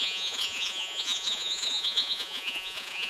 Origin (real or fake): fake